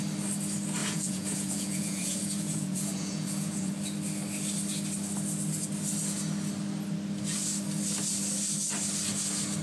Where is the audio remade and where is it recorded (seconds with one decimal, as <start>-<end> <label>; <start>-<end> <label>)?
0.0-0.8 recorded; 0.8-3.7 remade; 3.7-9.6 recorded